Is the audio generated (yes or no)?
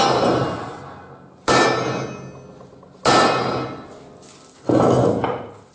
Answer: no